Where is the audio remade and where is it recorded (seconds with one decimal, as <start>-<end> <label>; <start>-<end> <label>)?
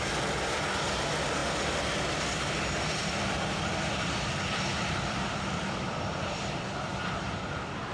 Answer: 0.0-3.0 recorded; 3.0-3.9 remade; 3.9-4.7 recorded; 4.7-6.6 remade; 6.6-7.9 recorded